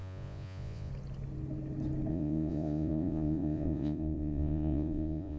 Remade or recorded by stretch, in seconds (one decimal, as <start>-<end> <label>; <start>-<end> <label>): 0.0-0.9 remade; 0.9-2.1 recorded; 2.1-5.4 remade

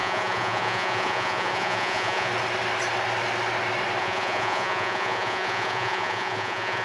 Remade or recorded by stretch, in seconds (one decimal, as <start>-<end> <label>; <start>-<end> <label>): 0.0-2.3 remade; 2.3-4.0 recorded; 4.0-6.8 remade

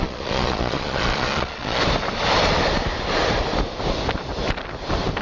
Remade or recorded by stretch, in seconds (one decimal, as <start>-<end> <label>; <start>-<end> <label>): 0.0-1.8 remade; 1.8-5.2 recorded

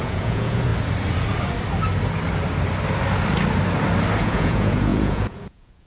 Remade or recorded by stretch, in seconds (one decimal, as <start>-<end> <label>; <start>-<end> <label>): 0.0-0.7 remade; 0.7-4.2 recorded; 4.2-5.9 remade

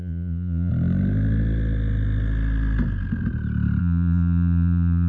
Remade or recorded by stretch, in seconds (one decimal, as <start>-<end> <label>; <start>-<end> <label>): 0.0-0.7 remade; 0.7-3.8 recorded; 3.8-5.1 remade